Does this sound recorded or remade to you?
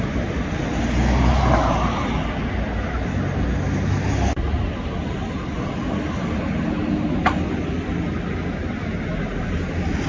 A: recorded